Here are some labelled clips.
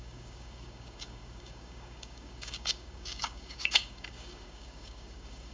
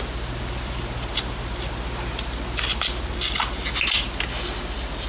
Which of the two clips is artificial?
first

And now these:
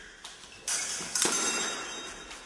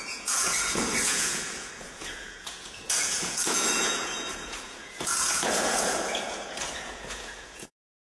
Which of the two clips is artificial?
second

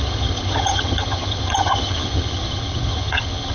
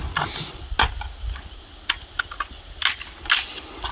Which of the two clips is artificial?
first